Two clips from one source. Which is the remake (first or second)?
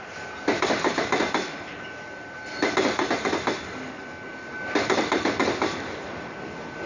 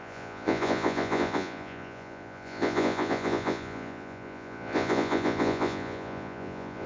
second